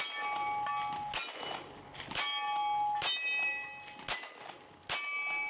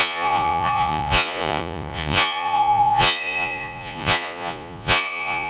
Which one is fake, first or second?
second